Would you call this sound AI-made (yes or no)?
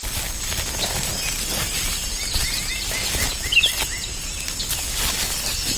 no